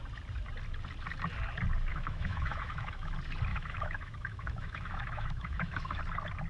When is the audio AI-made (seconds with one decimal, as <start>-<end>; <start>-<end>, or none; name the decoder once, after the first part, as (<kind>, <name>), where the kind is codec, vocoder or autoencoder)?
1.9-3.1 (autoencoder, DAC-VAE); 3.5-6.0